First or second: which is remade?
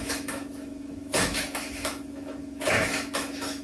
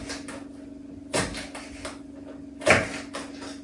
first